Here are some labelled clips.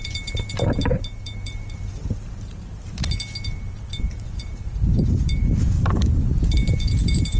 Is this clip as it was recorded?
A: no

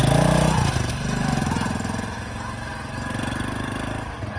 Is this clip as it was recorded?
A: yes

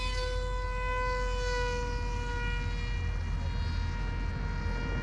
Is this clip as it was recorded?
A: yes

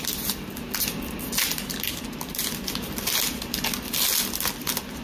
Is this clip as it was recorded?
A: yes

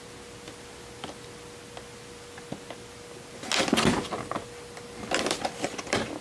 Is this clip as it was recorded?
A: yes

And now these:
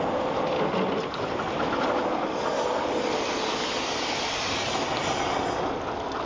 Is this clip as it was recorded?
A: yes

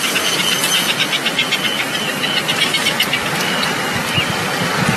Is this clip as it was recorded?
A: yes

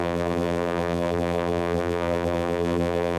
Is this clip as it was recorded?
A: no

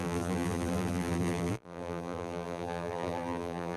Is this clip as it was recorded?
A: no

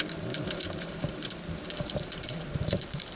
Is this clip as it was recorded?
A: no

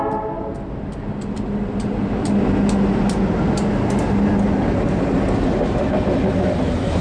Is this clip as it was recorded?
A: yes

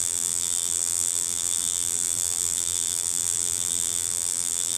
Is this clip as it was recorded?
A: no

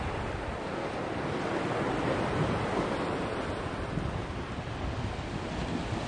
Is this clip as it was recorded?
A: yes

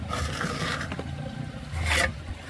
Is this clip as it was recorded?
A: no